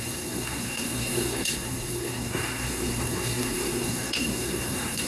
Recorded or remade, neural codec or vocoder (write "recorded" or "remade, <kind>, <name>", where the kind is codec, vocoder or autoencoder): remade, codec, SNAC